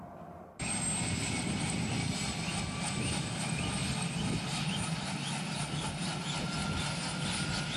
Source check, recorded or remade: recorded